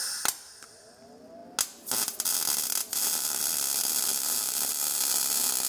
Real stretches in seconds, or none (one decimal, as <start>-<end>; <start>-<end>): 0.0-2.8; 3.4-4.1; 5.0-5.7